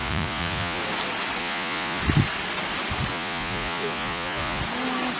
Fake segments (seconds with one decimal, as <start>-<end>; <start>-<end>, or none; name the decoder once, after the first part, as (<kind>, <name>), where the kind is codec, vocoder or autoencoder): 0.0-0.8 (vocoder, Vocos); 1.4-2.0; 3.1-4.6

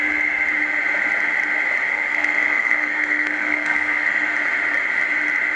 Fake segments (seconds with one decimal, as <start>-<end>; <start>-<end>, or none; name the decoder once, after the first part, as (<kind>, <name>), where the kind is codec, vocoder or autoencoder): 1.9-4.3 (codec, SNAC)

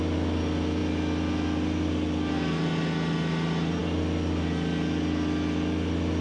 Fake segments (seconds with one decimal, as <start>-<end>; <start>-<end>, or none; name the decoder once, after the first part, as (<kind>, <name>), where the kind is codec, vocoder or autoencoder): none

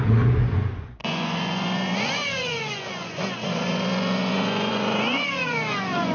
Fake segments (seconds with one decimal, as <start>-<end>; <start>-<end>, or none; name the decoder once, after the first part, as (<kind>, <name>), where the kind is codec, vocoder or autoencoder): 0.0-6.1 (vocoder, Vocos)